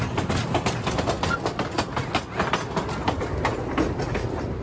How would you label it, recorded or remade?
recorded